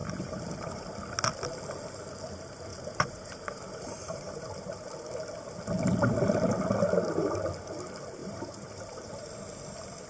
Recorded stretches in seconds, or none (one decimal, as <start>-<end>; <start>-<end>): 0.7-2.7; 4.9-8.2; 9.1-10.1